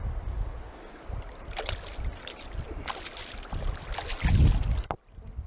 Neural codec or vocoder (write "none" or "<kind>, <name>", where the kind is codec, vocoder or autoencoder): none